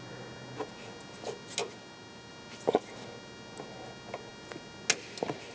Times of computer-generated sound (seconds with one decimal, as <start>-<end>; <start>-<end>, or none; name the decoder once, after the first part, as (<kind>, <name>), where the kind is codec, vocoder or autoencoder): 1.6-2.3 (vocoder, BigVGAN v2)